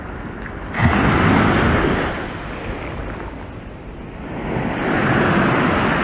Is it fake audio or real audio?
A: real